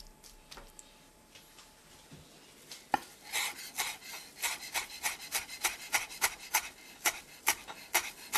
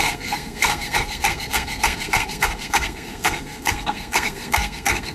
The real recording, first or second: first